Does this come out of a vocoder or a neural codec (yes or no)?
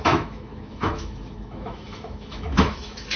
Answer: yes